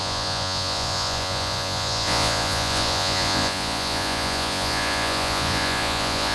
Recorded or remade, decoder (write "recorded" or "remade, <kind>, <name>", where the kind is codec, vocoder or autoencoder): remade, vocoder, Vocos